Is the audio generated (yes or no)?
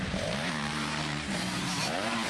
yes